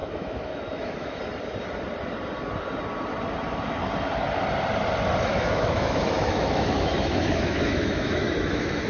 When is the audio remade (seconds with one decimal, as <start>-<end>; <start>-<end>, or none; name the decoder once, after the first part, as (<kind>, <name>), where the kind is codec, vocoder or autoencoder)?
0.0-1.2 (autoencoder, DAC-VAE); 5.3-8.9